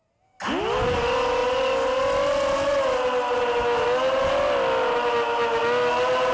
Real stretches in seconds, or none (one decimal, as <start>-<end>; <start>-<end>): 0.0-6.3